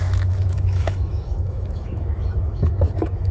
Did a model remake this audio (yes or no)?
yes